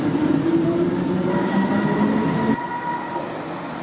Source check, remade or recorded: recorded